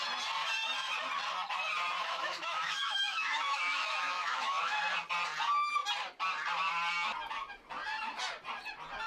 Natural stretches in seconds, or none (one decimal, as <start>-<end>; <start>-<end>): 0.0-2.0; 4.8-9.1